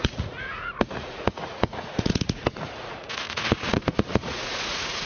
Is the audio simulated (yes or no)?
yes